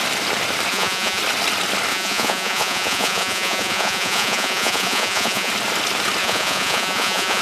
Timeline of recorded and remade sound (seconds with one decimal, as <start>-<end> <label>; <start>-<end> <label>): 0.0-0.7 recorded; 0.7-1.2 remade; 1.2-1.9 recorded; 1.9-5.5 remade; 5.5-6.2 recorded; 6.2-7.4 remade